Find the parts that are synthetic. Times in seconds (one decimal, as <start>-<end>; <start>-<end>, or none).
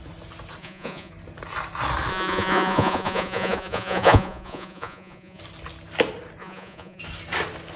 0.6-1.1; 2.1-5.4; 6.4-7.0